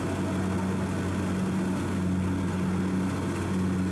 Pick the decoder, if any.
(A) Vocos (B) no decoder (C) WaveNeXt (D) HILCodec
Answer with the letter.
B